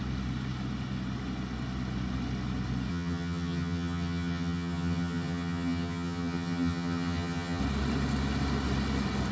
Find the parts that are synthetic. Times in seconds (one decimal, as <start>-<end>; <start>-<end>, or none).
2.9-7.6